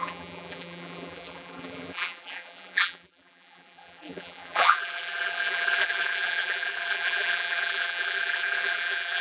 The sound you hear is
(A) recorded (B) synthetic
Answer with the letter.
B